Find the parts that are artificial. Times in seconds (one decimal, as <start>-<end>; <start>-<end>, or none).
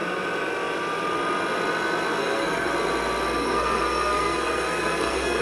2.2-2.7; 3.4-5.4